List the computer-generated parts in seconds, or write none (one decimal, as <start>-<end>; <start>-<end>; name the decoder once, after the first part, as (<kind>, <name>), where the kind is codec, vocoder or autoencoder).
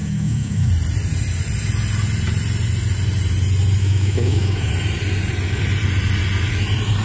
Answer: 0.0-0.7 (autoencoder, DAC-VAE); 3.8-4.7